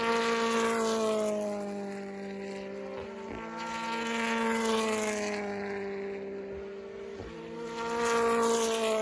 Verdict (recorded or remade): recorded